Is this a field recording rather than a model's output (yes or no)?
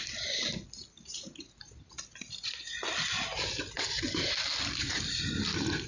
no